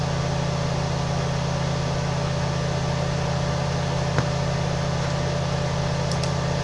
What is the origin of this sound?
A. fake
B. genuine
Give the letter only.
B